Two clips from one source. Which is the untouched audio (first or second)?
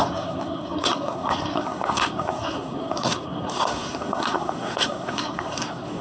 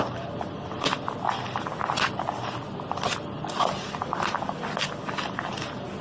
second